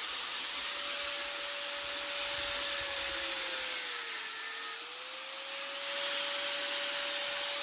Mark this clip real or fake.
real